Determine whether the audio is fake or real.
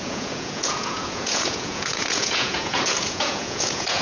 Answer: fake